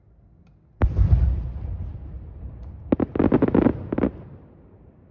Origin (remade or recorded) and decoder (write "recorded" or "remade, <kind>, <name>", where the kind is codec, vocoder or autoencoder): recorded